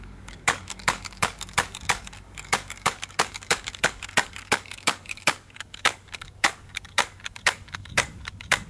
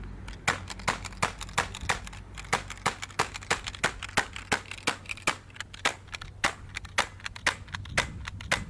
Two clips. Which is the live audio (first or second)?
second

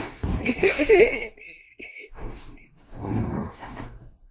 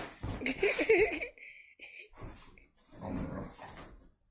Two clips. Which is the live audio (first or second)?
second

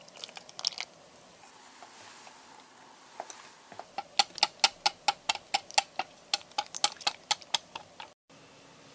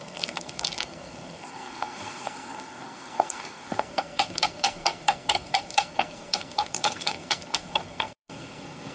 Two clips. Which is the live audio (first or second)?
first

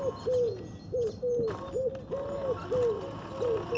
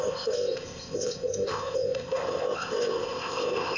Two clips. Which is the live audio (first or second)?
first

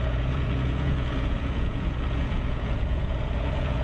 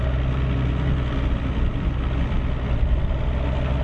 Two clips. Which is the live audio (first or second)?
second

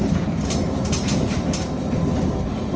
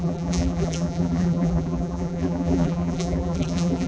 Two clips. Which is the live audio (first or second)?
first